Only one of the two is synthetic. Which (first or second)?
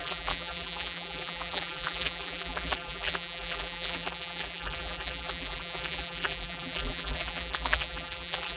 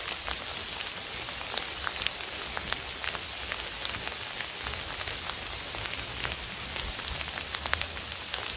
first